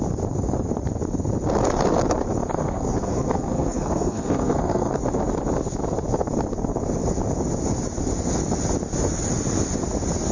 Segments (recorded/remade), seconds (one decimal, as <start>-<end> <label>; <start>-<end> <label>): 0.0-2.4 recorded; 2.4-4.9 remade; 4.9-10.3 recorded